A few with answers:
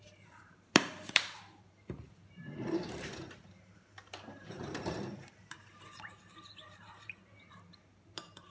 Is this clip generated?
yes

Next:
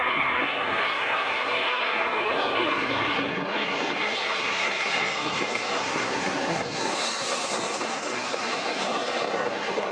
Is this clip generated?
yes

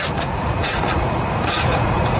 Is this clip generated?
yes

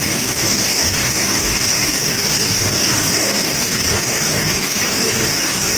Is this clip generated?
yes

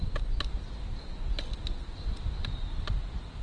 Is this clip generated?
no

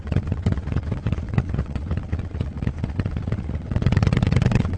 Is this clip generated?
yes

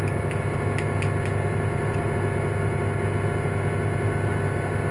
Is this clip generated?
no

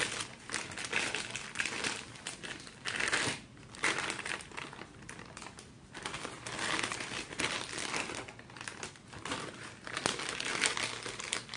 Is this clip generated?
no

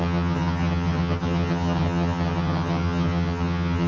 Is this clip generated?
yes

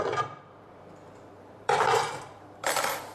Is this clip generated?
yes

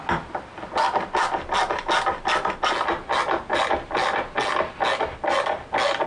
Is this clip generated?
no